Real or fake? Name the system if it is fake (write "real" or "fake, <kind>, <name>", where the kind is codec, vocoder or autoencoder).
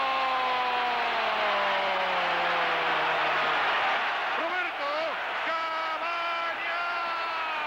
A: real